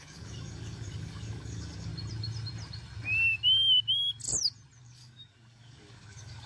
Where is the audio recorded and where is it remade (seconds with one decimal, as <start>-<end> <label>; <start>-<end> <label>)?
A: 0.0-1.9 remade; 1.9-4.8 recorded; 4.8-6.5 remade